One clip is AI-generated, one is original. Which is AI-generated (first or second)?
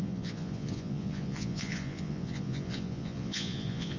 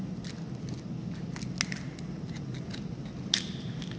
first